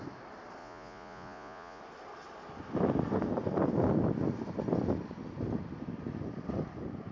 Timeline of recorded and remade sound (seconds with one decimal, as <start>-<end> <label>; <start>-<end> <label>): 0.0-0.6 recorded; 0.6-1.8 remade; 1.8-7.1 recorded